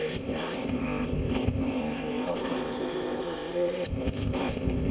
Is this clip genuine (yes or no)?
no